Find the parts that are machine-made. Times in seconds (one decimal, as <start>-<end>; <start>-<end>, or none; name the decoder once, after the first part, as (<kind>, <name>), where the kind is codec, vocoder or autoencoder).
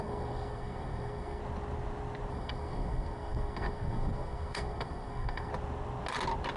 0.0-1.4 (codec, SNAC); 2.3-5.5